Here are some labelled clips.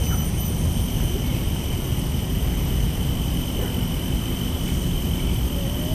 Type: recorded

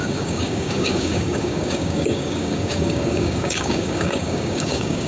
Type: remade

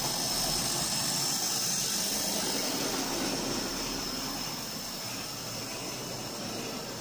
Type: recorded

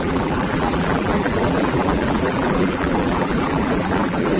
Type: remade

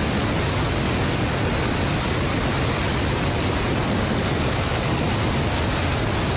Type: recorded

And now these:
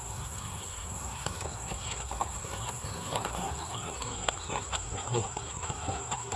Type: remade